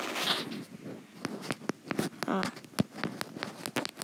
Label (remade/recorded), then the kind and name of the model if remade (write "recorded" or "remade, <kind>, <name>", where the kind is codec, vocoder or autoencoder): recorded